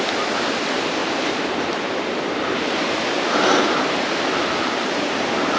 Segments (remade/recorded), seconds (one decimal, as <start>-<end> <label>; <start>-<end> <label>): 0.0-1.0 recorded; 1.0-4.4 remade; 4.4-5.6 recorded